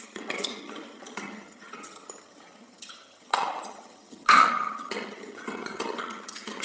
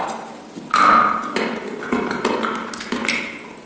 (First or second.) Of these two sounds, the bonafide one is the second